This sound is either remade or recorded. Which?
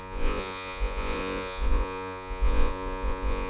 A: remade